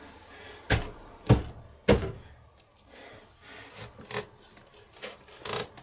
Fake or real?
real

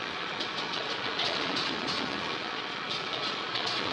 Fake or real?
fake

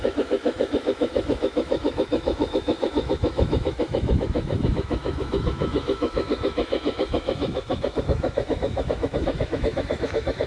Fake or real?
fake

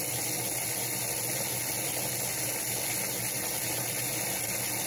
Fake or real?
real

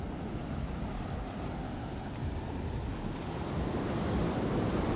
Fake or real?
real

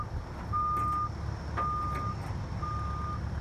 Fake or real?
real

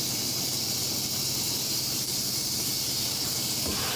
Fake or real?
fake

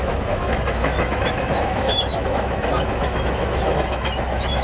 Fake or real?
fake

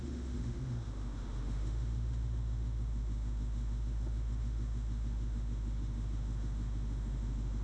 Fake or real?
fake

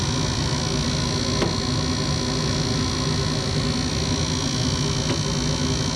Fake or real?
real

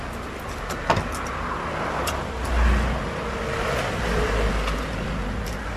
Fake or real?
real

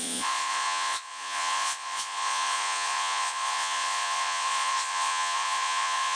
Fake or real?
fake